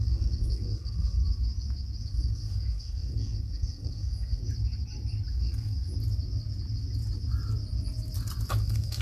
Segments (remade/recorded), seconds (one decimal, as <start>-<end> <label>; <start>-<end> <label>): 0.0-1.2 remade; 1.2-2.0 recorded; 2.0-4.4 remade; 4.4-5.3 recorded; 5.3-5.9 remade; 5.9-8.6 recorded; 8.6-9.0 remade